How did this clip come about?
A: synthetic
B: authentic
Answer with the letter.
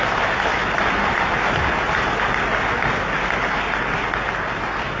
B